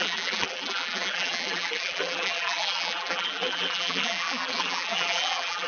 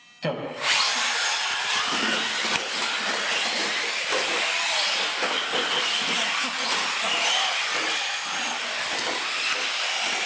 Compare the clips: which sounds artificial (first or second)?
first